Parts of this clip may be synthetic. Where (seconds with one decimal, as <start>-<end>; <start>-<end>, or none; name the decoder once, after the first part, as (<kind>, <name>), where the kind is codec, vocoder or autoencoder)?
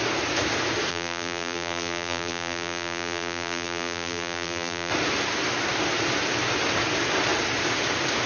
0.9-4.9 (vocoder, BigVGAN v2)